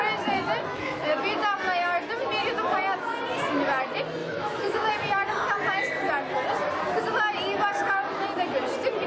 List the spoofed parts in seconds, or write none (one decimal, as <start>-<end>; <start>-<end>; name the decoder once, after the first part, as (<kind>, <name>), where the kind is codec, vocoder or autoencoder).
0.7-1.2 (autoencoder, DAC-VAE); 4.2-4.9